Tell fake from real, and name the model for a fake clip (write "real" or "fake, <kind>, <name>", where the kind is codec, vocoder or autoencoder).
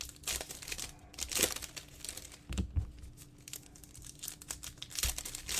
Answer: real